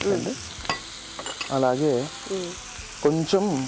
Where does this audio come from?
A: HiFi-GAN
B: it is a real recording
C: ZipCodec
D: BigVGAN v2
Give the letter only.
B